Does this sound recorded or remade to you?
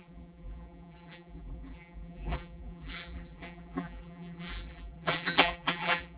remade